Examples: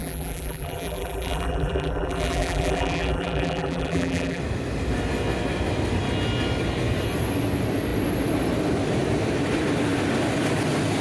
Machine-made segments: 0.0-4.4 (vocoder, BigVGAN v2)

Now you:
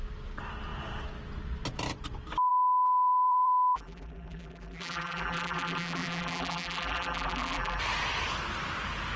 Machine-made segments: 2.5-7.8 (vocoder, BigVGAN v2)

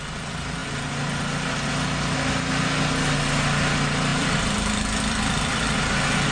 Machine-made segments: 4.1-5.8 (vocoder, BigVGAN v2)

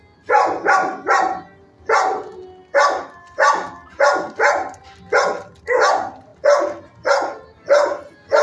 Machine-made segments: none

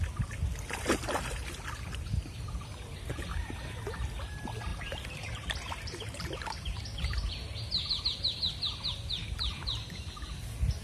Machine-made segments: 4.7-8.0 (vocoder, BigVGAN v2)

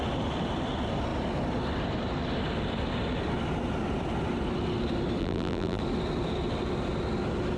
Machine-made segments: 5.2-5.8 (vocoder, BigVGAN v2)

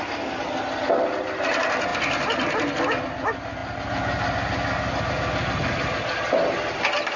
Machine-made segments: none